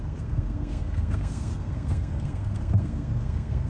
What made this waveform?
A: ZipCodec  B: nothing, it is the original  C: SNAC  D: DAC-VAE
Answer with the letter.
C